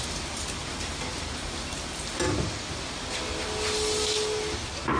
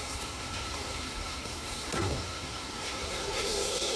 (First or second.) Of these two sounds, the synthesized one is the second